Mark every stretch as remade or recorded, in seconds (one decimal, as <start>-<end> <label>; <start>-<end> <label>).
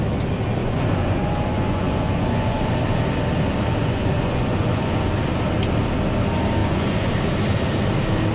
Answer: 0.0-0.6 recorded; 0.6-2.7 remade; 2.7-3.8 recorded; 3.8-5.1 remade; 5.1-6.6 recorded; 6.6-7.1 remade; 7.1-8.3 recorded